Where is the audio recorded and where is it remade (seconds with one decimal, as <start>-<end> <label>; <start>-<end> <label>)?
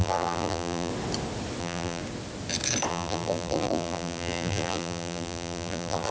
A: 0.0-0.9 remade; 0.9-1.6 recorded; 1.6-2.0 remade; 2.0-2.9 recorded; 2.9-6.1 remade